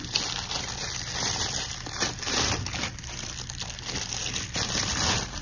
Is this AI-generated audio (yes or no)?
yes